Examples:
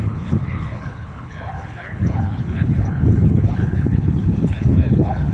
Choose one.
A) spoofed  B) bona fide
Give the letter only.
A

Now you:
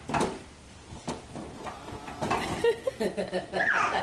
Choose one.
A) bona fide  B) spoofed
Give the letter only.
B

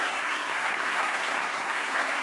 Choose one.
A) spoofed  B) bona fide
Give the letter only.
A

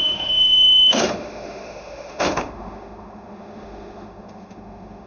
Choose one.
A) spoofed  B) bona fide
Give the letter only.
A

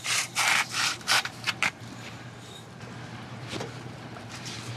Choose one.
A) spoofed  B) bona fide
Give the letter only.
A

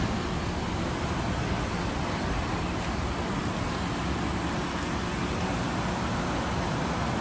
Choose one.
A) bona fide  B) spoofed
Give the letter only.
A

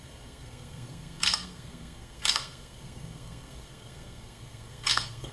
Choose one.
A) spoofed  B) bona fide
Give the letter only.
A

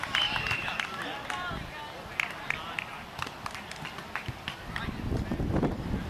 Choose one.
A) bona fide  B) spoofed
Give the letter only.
A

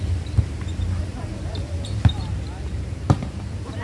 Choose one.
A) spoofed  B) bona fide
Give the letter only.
A